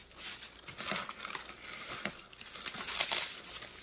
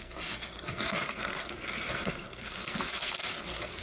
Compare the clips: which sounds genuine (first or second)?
first